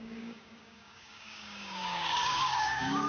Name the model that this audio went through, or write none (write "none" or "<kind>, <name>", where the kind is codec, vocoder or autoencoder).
codec, DAC